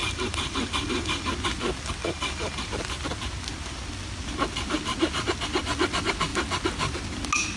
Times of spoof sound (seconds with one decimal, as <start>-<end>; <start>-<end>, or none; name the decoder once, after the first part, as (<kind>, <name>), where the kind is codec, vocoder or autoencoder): 0.0-1.3 (vocoder, BigVGAN v2); 2.0-2.7